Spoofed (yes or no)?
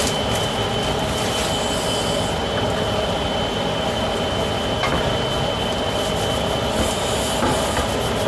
no